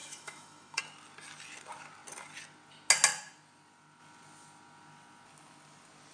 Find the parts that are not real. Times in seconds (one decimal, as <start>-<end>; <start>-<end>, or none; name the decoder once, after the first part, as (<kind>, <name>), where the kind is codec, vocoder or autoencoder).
0.0-0.8 (autoencoder, DAC-VAE)